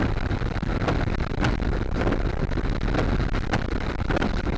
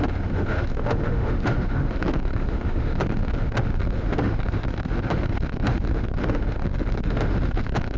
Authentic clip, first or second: first